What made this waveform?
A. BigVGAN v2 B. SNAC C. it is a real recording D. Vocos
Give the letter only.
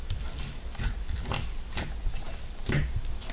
C